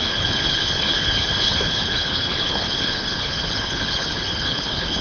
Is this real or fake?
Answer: fake